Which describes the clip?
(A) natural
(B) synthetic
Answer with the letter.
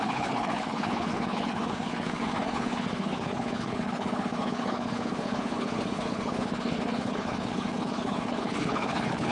B